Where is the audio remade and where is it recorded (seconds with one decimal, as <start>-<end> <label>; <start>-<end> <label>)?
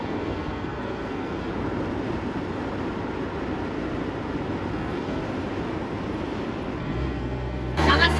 0.0-1.5 remade; 1.5-4.7 recorded; 4.7-5.2 remade; 5.2-6.8 recorded; 6.8-8.2 remade